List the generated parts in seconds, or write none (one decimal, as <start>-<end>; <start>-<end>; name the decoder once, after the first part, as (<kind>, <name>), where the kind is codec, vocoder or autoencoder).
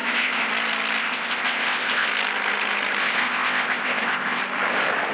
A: 0.0-0.5 (codec, ZipCodec); 1.0-2.1; 3.0-4.4